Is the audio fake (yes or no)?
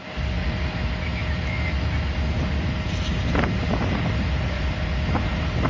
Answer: no